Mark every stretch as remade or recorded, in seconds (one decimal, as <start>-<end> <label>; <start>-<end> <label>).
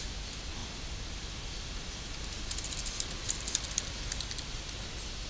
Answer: 0.0-5.3 recorded